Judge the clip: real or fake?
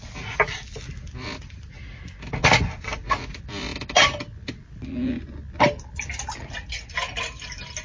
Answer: real